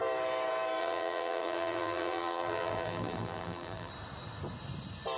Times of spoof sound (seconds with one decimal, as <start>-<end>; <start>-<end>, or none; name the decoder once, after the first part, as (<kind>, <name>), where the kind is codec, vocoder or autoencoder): 0.8-3.9 (vocoder, BigVGAN v2)

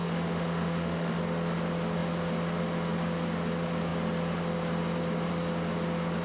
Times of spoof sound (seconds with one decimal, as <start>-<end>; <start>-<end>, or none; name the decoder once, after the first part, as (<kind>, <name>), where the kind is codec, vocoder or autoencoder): 0.0-1.2 (autoencoder, DAC-VAE)

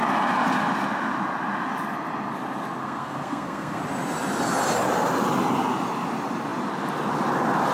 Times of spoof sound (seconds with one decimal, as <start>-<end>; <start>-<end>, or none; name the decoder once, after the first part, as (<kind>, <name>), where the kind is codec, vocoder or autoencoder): 2.8-3.8 (codec, SNAC)